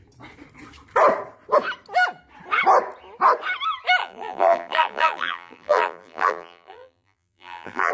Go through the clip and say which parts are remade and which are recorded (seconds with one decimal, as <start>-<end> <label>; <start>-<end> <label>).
0.0-4.0 recorded; 4.0-7.9 remade